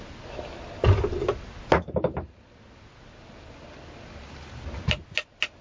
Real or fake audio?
real